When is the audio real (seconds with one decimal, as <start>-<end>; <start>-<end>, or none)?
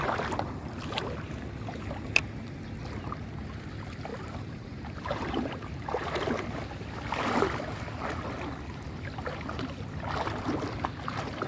0.0-4.1; 6.6-11.5